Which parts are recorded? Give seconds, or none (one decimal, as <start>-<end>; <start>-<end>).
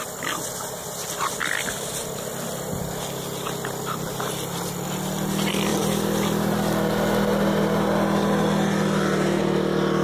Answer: 0.0-10.0